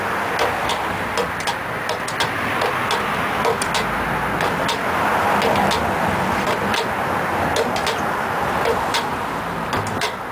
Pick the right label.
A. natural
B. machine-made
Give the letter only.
A